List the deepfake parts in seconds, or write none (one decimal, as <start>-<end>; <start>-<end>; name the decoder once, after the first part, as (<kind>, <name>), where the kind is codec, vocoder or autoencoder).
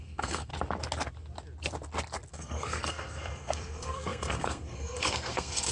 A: 0.0-0.5 (codec, SNAC); 2.3-5.7